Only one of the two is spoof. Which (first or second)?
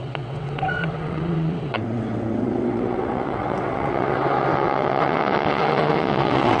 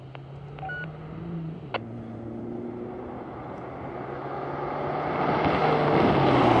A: first